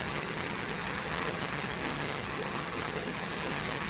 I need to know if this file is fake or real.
fake